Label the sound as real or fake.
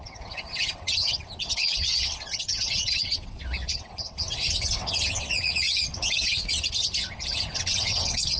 fake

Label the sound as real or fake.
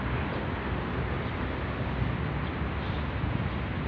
real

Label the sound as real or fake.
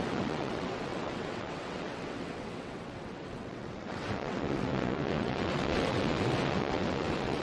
fake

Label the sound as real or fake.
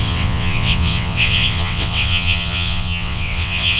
fake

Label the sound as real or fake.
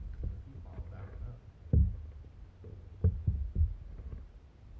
real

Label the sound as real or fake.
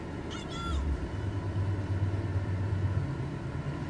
real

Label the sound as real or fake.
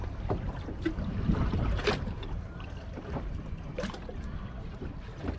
real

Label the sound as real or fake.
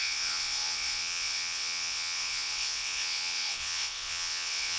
fake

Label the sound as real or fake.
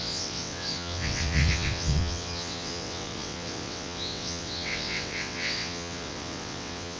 fake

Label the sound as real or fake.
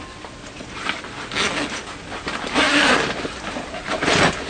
real